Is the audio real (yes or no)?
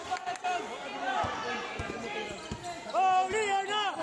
yes